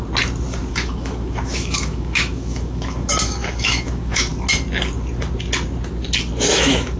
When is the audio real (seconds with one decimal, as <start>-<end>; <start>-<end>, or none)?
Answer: 0.0-0.7; 4.3-6.5